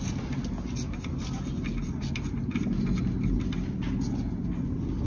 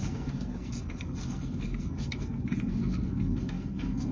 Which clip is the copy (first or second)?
second